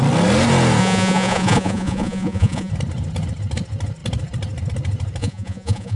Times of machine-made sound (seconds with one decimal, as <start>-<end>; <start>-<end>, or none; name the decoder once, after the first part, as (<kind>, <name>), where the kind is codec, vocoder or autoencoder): 0.8-2.7 (vocoder, Vocos); 5.2-6.0